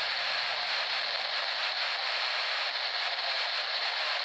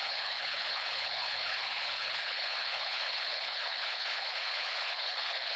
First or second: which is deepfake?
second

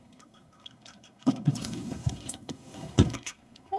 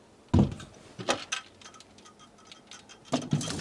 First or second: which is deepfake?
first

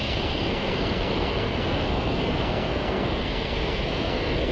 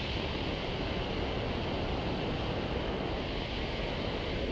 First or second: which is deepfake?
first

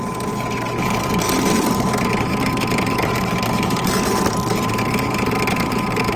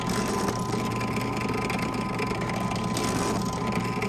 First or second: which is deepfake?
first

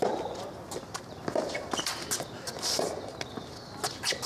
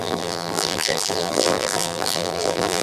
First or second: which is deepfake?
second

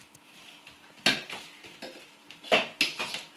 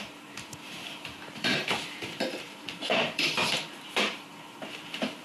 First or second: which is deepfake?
second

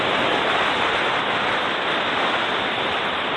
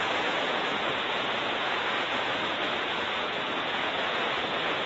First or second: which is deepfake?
second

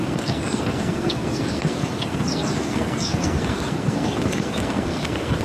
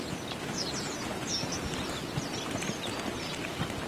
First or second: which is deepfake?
first